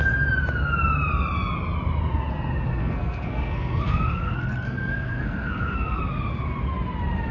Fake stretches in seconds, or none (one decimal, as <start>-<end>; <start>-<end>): 2.8-6.0